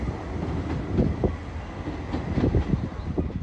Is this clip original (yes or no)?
yes